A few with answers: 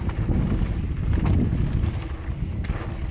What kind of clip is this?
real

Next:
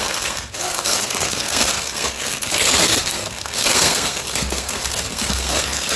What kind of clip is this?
fake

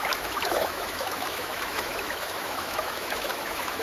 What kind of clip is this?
fake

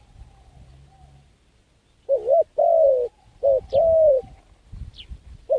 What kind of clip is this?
real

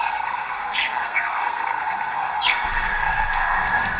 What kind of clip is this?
fake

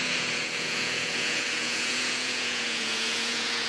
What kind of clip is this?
fake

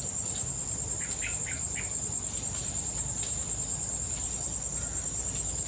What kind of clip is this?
real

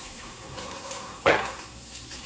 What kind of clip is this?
fake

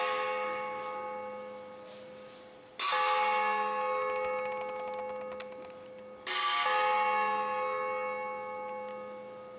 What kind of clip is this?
real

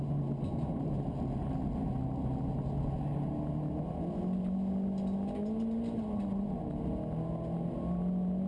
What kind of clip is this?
real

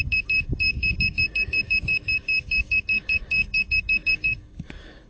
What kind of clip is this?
fake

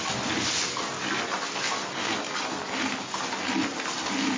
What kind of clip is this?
real